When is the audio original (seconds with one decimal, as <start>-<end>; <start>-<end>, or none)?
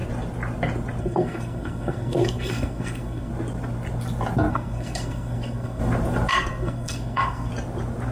0.0-1.0; 3.3-4.5; 5.8-6.3; 7.5-8.1